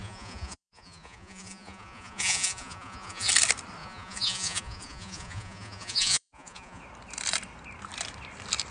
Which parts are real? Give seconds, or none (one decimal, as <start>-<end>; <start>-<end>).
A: 3.3-3.8; 6.8-8.7